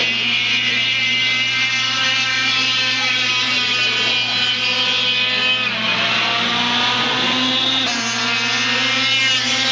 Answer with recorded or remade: recorded